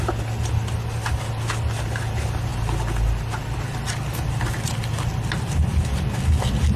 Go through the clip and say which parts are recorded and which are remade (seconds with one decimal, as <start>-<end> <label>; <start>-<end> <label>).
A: 0.0-6.8 recorded